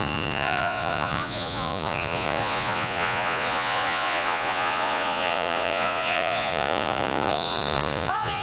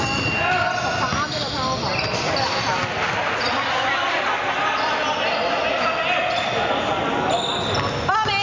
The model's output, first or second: first